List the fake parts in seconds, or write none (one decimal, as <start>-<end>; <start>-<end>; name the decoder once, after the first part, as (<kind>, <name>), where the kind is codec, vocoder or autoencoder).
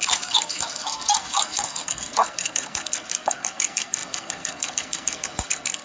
0.0-5.8 (codec, SNAC)